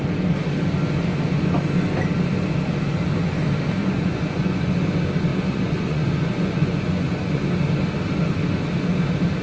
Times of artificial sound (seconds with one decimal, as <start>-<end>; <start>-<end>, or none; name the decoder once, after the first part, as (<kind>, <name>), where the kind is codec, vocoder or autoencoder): 3.8-4.7 (vocoder, Vocos); 5.3-7.4